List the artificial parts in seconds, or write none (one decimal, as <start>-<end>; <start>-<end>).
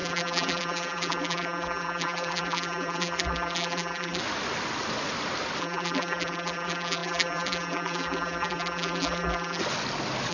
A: 0.0-4.2; 5.6-9.6